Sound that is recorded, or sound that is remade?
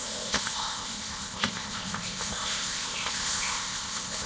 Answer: remade